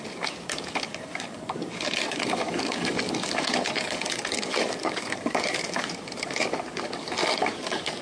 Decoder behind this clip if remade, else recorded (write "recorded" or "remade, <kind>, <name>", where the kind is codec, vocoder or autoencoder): remade, codec, DAC